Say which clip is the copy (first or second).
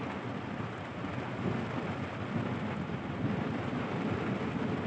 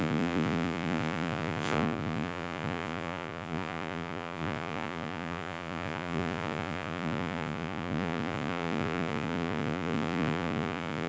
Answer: second